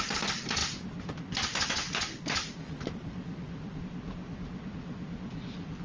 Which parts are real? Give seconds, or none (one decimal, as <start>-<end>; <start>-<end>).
0.0-5.8